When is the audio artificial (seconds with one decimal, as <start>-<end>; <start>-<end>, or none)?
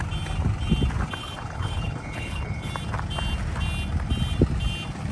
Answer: 1.2-2.7